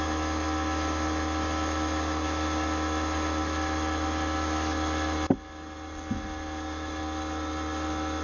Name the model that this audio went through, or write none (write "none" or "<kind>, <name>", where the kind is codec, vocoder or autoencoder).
none